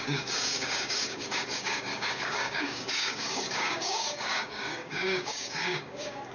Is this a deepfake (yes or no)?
yes